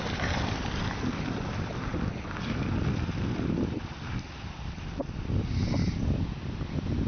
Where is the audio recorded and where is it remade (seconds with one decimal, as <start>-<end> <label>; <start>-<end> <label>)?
0.0-1.9 remade; 1.9-2.8 recorded; 2.8-7.1 remade